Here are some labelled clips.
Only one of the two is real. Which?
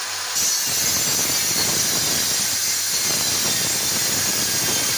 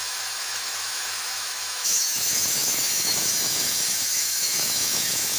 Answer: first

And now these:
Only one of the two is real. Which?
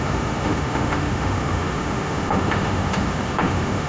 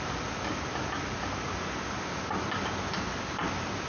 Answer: second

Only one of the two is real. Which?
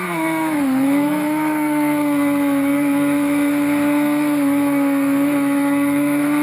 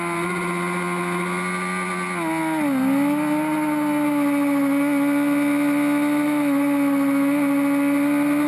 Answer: second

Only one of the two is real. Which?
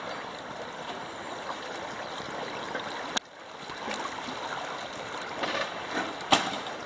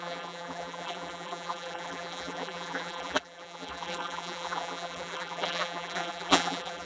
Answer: first